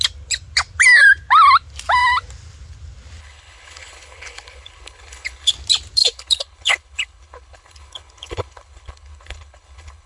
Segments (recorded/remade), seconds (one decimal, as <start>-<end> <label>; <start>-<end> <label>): 0.0-3.2 recorded; 3.2-5.5 remade; 5.5-6.0 recorded; 6.0-10.1 remade